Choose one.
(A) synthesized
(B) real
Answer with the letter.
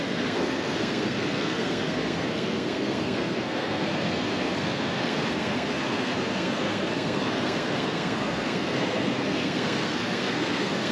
A